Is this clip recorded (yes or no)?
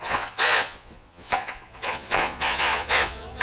no